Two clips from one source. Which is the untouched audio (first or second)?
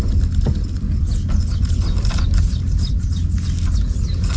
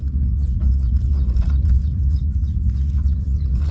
first